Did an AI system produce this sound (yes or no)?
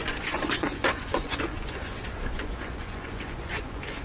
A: yes